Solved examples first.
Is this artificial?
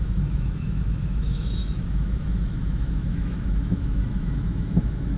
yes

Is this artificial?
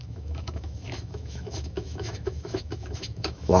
yes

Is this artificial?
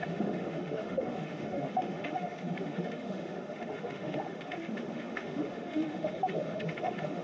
yes